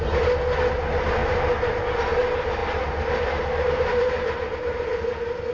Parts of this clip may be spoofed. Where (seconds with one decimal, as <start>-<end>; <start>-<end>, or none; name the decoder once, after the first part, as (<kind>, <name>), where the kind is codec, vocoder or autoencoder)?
1.2-1.8 (vocoder, BigVGAN v2); 2.6-4.9